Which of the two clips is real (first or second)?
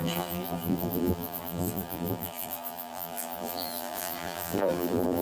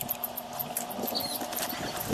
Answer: second